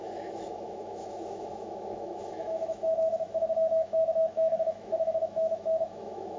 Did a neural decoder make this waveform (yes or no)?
yes